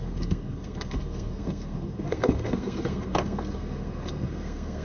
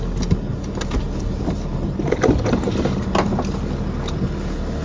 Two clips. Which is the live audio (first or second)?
second